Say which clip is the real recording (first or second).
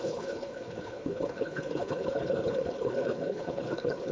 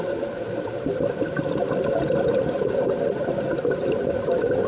second